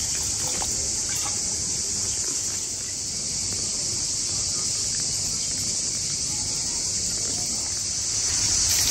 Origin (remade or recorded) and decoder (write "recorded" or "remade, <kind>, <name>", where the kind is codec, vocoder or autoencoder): recorded